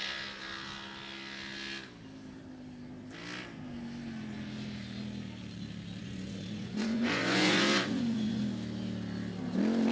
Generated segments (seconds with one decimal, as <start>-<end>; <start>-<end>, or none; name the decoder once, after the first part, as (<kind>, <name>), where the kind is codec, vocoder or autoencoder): 6.0-8.4 (vocoder, Vocos)